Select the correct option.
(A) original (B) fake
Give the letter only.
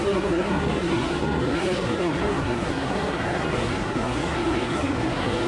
B